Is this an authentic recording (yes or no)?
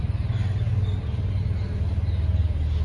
yes